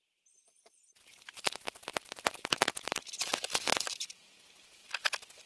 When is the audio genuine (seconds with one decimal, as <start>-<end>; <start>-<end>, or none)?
0.0-5.5